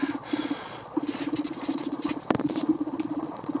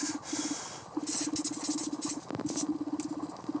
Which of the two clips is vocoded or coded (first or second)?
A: first